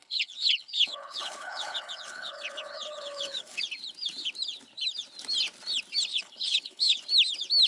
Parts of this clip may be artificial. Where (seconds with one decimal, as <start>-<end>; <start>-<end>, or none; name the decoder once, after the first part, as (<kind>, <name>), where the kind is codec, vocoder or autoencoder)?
0.0-3.6 (codec, HILCodec); 6.1-7.0